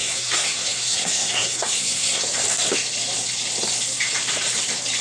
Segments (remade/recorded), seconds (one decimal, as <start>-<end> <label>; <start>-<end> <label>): 0.0-2.2 remade; 2.2-5.0 recorded